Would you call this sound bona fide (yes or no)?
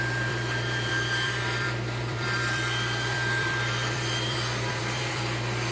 no